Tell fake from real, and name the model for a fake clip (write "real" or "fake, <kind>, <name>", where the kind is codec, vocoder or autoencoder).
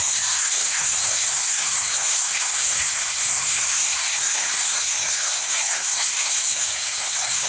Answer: fake, codec, SNAC